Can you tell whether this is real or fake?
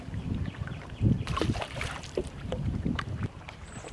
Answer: fake